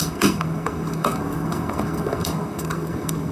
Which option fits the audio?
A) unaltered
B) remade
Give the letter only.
B